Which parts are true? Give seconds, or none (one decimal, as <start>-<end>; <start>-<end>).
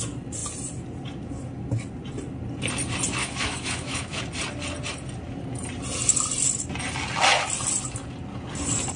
0.0-3.2; 4.2-9.0